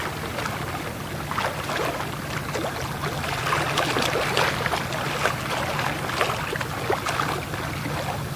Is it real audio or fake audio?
real